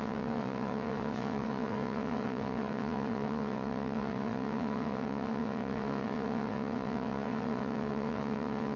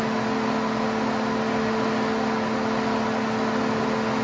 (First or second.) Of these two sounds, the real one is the second